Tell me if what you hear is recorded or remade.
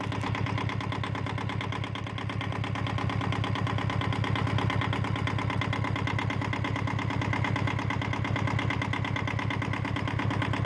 recorded